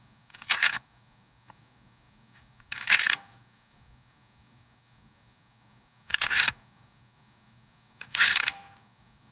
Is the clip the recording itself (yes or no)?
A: no